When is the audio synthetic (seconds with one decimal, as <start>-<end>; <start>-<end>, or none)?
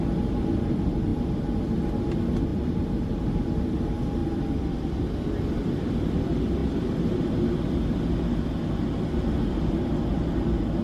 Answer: 2.5-3.4